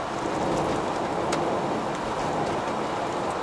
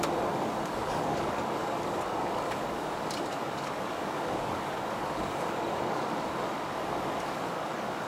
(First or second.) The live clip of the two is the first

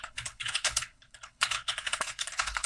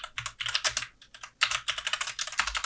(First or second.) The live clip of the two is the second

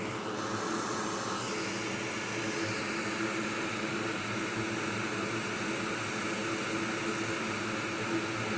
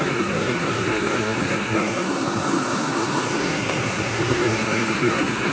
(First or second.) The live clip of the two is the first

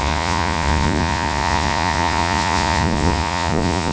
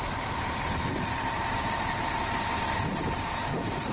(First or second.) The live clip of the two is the second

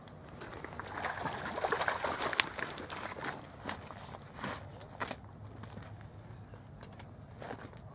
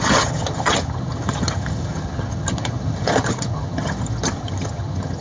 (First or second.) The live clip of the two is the first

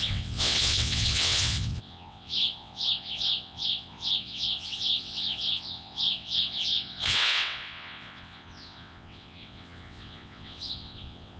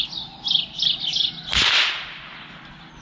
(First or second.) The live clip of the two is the second